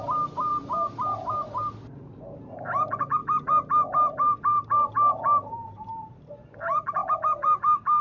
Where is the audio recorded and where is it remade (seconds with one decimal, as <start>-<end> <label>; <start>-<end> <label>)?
0.0-3.2 recorded; 3.2-6.2 remade; 6.2-7.0 recorded; 7.0-7.6 remade; 7.6-8.0 recorded